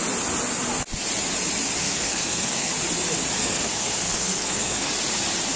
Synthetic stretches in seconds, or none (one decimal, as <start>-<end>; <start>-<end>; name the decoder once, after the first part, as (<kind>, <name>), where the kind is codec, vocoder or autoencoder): 1.8-2.7 (codec, SNAC); 3.4-4.9